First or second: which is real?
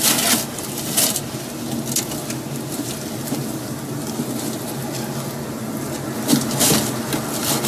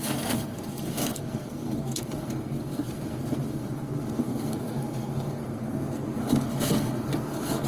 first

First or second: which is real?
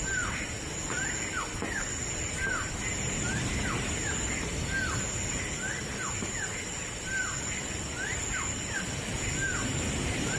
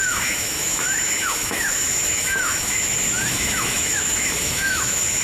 first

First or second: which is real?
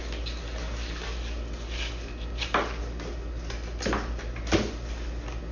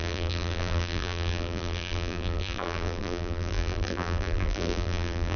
first